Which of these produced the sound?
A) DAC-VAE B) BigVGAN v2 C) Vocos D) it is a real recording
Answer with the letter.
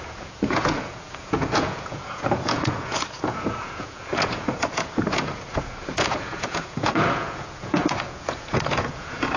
C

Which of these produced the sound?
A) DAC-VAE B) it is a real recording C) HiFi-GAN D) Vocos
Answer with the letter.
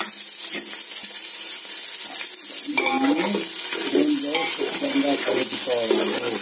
B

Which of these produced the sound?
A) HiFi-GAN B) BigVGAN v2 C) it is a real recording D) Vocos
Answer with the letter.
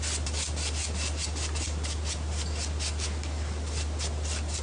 C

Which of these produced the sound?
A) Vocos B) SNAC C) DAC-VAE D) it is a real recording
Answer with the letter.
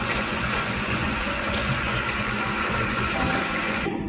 A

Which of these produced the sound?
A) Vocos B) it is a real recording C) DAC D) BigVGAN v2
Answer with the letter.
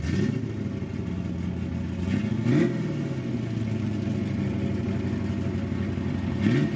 B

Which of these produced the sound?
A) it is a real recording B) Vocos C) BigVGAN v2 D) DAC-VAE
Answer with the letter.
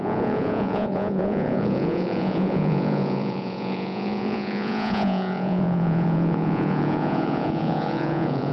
B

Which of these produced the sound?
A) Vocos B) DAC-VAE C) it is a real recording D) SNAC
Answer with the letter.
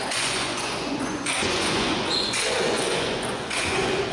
A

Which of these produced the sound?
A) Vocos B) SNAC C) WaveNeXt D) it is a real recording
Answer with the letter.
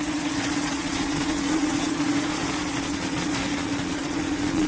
A